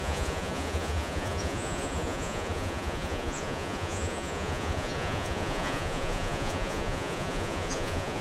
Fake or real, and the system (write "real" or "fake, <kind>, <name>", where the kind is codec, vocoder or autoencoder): fake, vocoder, Vocos